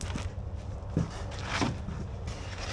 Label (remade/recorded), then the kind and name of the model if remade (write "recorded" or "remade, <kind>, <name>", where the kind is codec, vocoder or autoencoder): recorded